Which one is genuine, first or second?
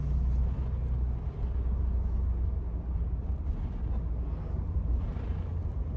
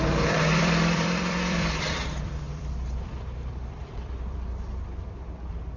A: first